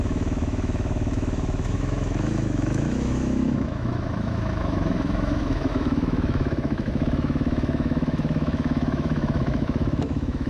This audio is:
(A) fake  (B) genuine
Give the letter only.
A